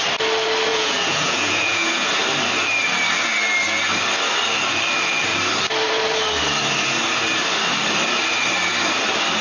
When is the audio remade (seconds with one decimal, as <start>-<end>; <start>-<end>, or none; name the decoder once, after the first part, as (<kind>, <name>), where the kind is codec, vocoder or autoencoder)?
0.7-2.1 (vocoder, Vocos)